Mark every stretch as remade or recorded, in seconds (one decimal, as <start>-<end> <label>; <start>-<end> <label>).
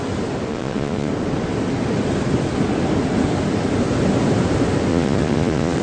0.0-0.5 recorded; 0.5-1.1 remade; 1.1-4.9 recorded; 4.9-5.8 remade